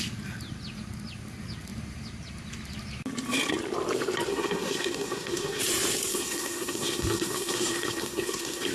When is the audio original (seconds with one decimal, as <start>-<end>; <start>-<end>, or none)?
0.0-4.3; 5.6-6.1